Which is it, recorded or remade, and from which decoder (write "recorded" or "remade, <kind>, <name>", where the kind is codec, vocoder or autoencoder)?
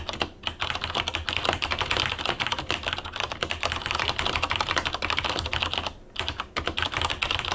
recorded